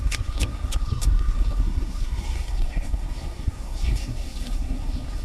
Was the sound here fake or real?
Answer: fake